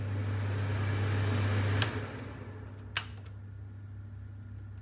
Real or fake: real